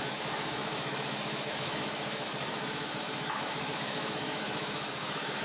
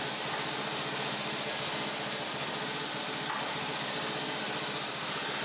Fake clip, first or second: first